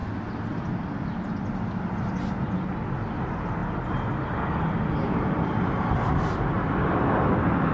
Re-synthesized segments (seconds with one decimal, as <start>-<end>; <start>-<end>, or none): none